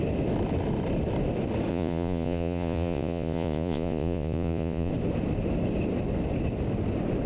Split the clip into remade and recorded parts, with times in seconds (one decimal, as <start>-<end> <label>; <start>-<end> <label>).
0.0-1.7 recorded; 1.7-4.9 remade; 4.9-7.3 recorded